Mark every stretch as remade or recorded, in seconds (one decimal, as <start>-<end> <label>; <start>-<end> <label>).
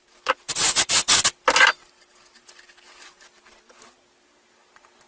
0.0-5.1 recorded